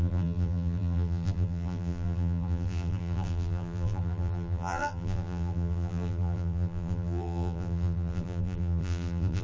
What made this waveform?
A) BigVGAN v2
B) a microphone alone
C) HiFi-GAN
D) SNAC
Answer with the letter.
A